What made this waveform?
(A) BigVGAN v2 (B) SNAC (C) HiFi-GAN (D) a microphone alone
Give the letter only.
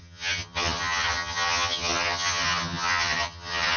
C